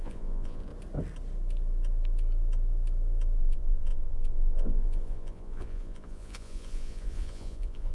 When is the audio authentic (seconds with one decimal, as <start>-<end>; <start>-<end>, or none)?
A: 0.7-3.4